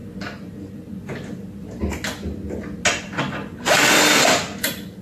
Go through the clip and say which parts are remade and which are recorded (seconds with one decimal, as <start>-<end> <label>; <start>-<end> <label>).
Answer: 0.0-5.0 recorded